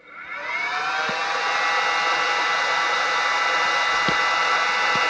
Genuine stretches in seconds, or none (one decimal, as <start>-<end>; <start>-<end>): 0.0-5.1